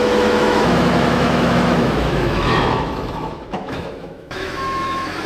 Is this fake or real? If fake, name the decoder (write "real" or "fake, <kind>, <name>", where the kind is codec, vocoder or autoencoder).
fake, autoencoder, DAC-VAE